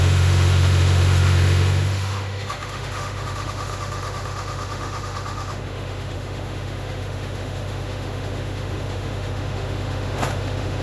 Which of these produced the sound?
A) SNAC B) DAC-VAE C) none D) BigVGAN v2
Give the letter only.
B